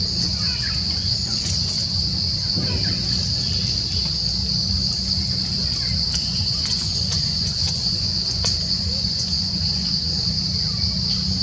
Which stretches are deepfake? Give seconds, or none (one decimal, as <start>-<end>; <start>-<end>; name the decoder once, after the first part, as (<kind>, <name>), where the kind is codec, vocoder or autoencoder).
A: 0.0-1.7 (vocoder, Vocos); 6.2-10.3